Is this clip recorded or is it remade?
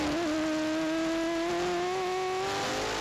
recorded